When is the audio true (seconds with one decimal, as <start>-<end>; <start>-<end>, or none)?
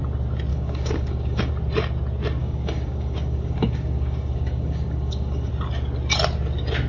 0.0-0.5; 1.5-2.4; 5.5-6.9